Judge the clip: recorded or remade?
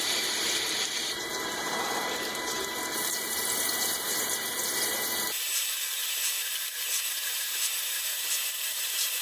remade